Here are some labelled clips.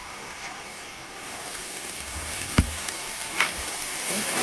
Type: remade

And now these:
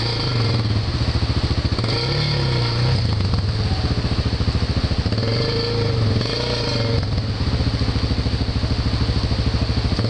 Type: recorded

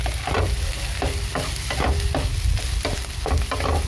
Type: recorded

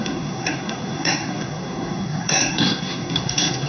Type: remade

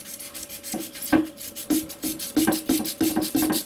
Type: recorded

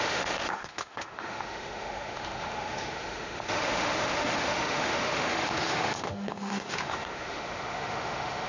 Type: remade